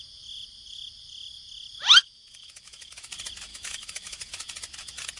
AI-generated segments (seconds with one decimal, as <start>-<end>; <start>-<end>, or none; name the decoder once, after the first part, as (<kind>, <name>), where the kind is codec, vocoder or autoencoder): 2.0-3.1 (autoencoder, DAC-VAE); 3.5-4.3